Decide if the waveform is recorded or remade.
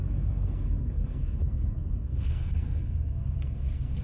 remade